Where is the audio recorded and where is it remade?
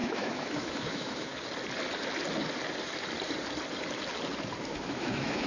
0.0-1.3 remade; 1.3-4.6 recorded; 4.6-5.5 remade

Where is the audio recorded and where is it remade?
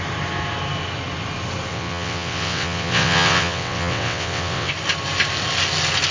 0.0-1.7 recorded; 1.7-4.7 remade; 4.7-6.1 recorded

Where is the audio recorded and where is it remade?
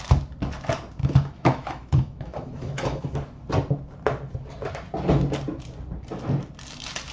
0.0-1.0 recorded; 1.0-3.0 remade; 3.0-7.1 recorded